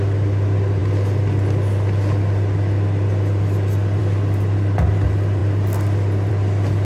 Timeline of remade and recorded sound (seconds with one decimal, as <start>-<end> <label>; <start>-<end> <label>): 0.0-6.8 recorded